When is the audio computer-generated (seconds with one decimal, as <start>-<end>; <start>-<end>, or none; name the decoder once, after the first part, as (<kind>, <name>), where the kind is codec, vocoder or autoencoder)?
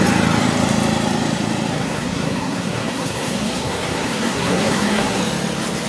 1.7-5.2 (codec, SNAC)